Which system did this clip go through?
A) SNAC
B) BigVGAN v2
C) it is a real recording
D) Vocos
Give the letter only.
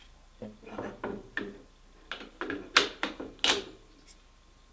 C